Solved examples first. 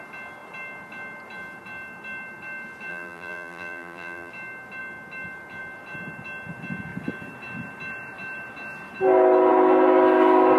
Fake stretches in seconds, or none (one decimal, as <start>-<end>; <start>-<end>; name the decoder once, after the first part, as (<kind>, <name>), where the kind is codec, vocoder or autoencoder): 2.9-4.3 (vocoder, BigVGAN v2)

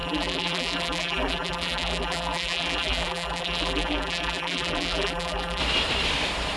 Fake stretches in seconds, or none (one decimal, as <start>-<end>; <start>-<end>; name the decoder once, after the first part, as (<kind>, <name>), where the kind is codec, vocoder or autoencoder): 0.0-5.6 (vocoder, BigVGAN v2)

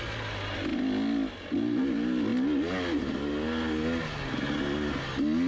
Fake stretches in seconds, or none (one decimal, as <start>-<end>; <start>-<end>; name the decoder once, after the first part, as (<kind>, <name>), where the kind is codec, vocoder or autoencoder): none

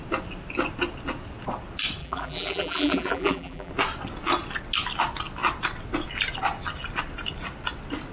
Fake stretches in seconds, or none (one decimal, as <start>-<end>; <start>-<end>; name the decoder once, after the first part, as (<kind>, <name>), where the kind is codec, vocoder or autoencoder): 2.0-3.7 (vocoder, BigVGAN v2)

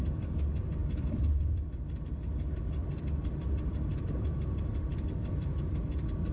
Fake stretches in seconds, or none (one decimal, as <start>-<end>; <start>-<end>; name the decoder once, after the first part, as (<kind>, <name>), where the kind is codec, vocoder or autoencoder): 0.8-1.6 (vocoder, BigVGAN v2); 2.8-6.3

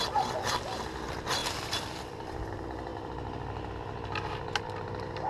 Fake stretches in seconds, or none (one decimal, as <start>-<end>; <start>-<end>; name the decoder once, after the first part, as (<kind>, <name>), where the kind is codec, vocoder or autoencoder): 1.4-2.3 (vocoder, BigVGAN v2)

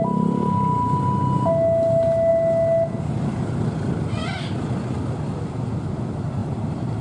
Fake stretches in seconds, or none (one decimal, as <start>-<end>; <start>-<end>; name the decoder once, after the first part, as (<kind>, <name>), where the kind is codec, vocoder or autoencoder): 6.4-7.0 (vocoder, BigVGAN v2)

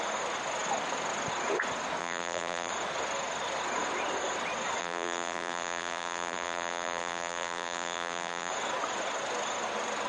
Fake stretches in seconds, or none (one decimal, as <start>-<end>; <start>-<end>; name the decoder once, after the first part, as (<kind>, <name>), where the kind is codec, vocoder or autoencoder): 2.0-2.7 (vocoder, BigVGAN v2); 4.8-8.5